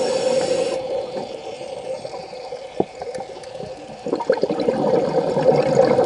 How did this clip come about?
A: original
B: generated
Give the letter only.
A